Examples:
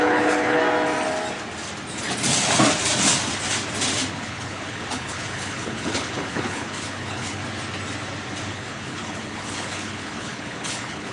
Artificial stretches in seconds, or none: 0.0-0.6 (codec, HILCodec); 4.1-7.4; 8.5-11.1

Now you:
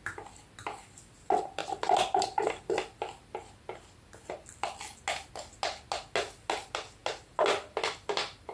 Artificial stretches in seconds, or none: none

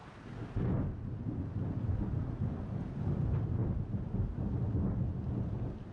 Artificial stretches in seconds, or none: none